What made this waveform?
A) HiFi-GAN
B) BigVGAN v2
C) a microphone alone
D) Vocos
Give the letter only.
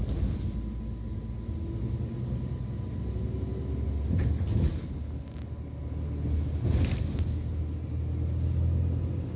C